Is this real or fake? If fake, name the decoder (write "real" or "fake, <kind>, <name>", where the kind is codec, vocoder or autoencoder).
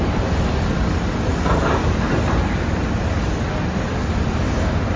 real